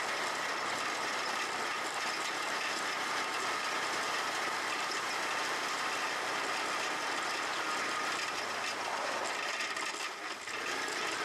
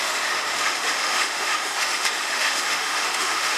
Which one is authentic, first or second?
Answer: first